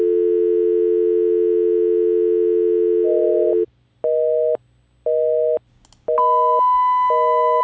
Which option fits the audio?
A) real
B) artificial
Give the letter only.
A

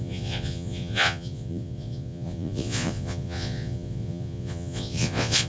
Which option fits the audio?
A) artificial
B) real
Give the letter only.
A